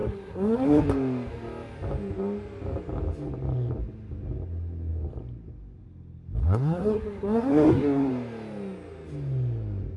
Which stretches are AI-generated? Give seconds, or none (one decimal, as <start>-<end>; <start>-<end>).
0.0-0.8; 6.4-8.1